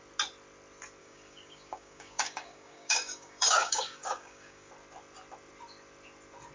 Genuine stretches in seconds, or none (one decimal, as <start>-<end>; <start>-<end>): 0.0-1.0; 4.7-6.5